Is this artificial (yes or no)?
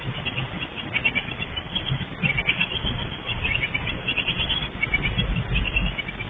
no